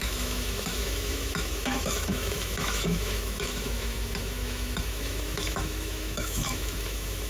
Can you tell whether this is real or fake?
fake